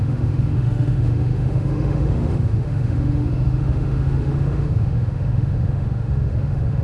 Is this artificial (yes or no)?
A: yes